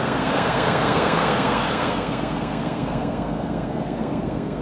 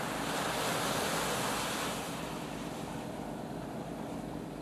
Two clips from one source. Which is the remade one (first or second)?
first